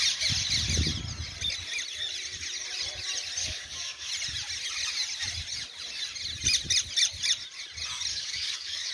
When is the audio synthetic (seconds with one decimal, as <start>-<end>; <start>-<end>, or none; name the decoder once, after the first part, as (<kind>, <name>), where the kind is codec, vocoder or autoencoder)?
3.4-4.1 (codec, DAC); 8.1-8.9